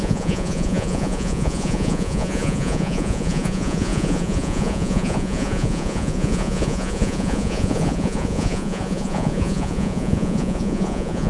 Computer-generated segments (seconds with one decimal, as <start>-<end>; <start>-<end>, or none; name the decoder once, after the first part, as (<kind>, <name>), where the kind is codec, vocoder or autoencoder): 0.0-11.3 (vocoder, Vocos)